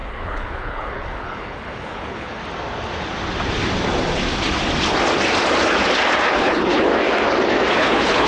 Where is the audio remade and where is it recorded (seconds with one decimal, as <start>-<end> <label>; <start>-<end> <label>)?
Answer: 0.0-2.4 remade; 2.4-6.3 recorded; 6.3-6.9 remade; 6.9-7.7 recorded; 7.7-8.3 remade